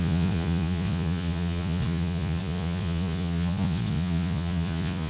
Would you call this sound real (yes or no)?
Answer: no